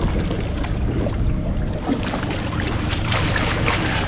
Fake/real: real